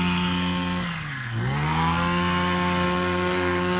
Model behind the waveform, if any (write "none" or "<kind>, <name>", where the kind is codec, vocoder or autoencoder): codec, SNAC